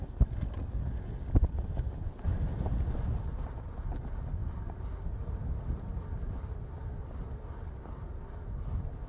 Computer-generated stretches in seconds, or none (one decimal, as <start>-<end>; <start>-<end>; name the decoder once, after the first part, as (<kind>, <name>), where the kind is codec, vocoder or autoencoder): none